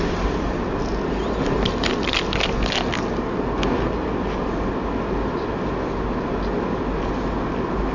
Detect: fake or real real